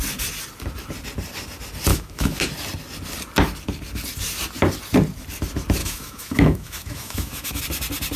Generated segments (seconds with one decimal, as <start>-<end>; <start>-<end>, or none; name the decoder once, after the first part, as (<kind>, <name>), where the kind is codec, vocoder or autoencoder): 1.9-2.5 (autoencoder, DAC-VAE); 5.8-7.6